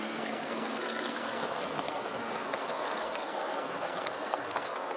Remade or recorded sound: remade